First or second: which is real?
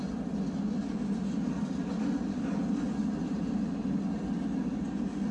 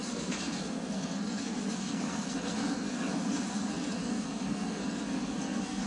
first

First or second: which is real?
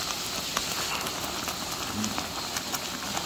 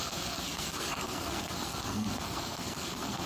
first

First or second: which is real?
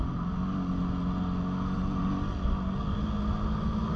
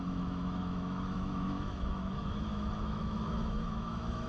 first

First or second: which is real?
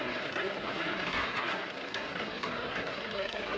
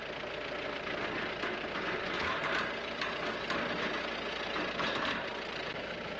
second